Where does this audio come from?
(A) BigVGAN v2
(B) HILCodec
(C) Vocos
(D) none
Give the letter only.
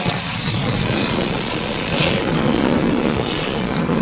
C